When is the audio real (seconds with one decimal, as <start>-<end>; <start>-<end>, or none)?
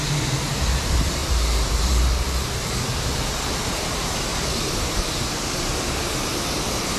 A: 6.3-7.0